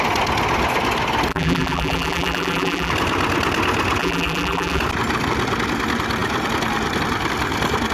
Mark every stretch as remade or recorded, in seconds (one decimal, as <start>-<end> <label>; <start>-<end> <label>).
0.0-1.3 recorded; 1.3-2.9 remade; 2.9-4.0 recorded; 4.0-4.8 remade; 4.8-7.9 recorded